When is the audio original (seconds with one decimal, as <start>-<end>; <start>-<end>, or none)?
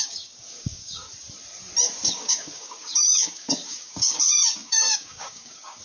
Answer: 1.0-2.1